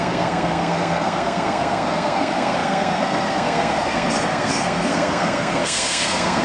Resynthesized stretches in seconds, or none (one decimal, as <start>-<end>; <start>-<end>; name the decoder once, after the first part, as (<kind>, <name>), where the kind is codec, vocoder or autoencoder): 0.0-6.4 (codec, SNAC)